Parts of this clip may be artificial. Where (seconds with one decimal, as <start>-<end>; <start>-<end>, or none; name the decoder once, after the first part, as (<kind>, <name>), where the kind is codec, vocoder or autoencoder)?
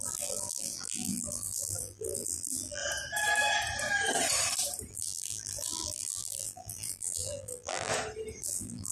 0.0-2.8 (vocoder, BigVGAN v2); 4.9-7.9; 8.4-8.9